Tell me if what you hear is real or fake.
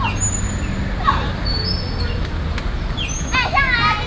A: real